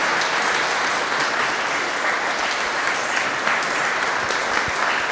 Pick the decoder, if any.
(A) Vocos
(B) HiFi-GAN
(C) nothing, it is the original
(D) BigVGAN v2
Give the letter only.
C